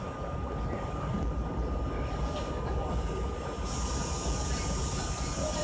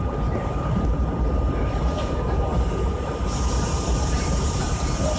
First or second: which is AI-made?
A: second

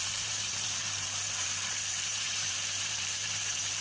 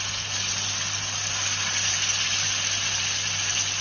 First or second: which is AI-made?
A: first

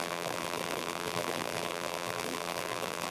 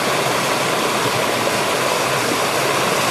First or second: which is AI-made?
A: first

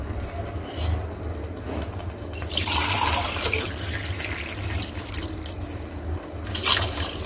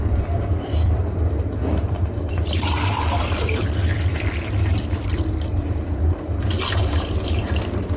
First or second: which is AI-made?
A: second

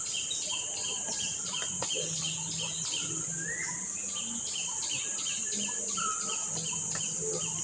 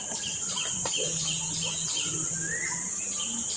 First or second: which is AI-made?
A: second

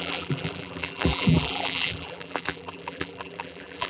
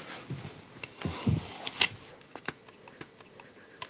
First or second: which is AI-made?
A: first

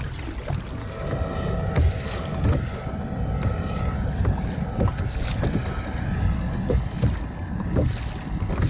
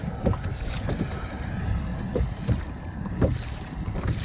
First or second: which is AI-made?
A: second